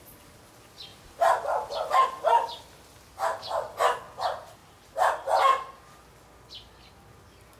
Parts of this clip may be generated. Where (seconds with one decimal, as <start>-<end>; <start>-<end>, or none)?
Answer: 0.9-2.0; 4.6-5.7